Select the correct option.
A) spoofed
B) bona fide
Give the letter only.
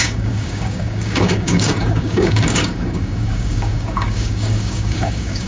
A